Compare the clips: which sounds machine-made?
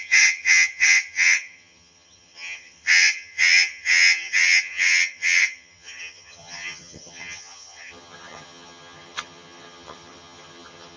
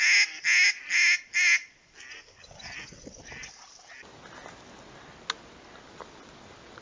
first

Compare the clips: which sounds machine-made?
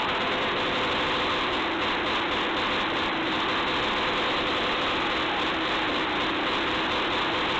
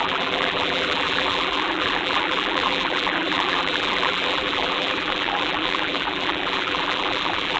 second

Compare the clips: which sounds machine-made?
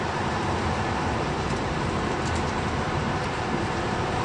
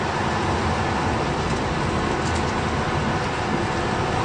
first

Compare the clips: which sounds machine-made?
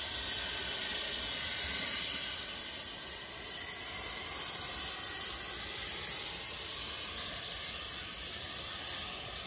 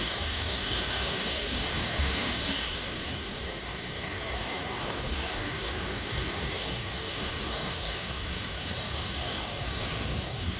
second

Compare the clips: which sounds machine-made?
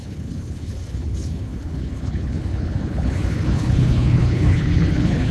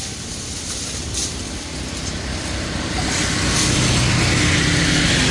first